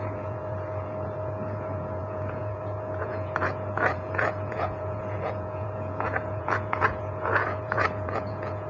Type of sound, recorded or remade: remade